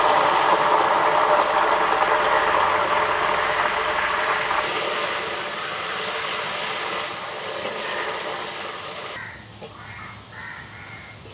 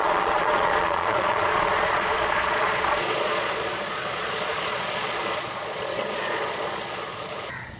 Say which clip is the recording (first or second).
first